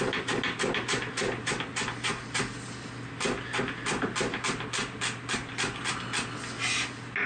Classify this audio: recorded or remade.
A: recorded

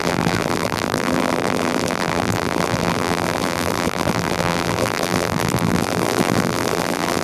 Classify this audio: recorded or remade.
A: remade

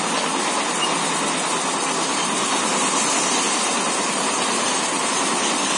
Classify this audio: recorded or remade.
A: recorded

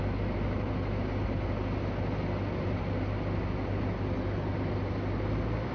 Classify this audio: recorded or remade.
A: recorded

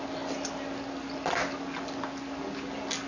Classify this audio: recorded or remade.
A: recorded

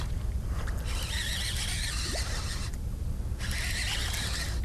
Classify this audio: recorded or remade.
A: recorded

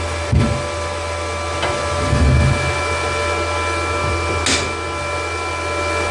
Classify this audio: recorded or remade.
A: recorded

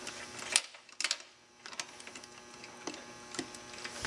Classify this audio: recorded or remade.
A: recorded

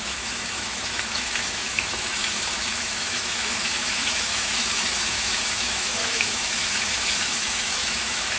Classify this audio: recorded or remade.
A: remade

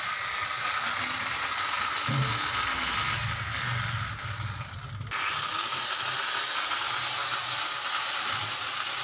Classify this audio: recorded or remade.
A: recorded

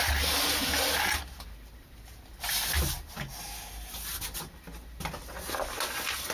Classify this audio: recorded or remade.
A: recorded